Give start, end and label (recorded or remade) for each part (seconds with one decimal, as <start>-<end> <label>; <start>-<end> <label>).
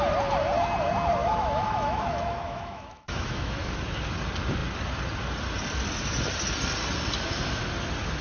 0.0-1.2 recorded; 1.2-3.8 remade; 3.8-8.2 recorded